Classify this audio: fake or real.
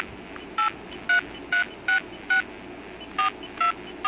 real